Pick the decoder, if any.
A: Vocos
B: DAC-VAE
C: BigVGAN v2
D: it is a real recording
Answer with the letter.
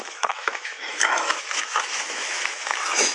B